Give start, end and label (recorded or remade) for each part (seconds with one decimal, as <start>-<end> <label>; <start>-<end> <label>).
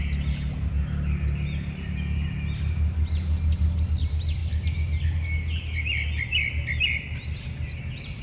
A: 0.0-8.2 recorded